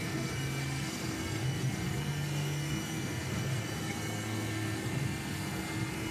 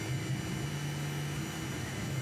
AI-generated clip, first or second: first